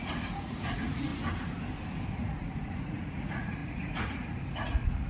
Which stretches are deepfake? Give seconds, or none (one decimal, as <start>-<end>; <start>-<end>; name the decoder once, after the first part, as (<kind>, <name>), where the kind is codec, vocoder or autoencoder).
0.0-1.1 (vocoder, Vocos); 2.1-5.1